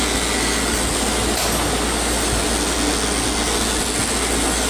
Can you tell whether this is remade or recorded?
recorded